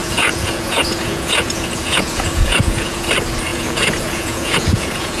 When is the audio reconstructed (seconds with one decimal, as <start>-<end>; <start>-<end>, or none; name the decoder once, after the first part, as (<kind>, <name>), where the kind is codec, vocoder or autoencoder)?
0.0-3.1 (vocoder, Vocos); 3.5-5.2